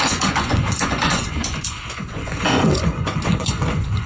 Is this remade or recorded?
remade